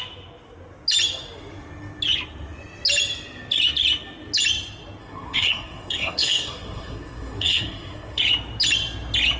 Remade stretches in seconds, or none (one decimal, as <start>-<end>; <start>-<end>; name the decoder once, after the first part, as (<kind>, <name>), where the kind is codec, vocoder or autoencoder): 5.0-8.2 (codec, SNAC)